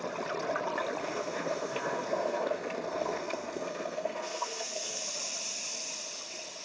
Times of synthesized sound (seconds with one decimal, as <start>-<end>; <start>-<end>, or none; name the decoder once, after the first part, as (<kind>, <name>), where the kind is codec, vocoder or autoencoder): 1.0-5.0 (codec, SNAC)